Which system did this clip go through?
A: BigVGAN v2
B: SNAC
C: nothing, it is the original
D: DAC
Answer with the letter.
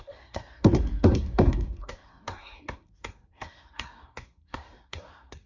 B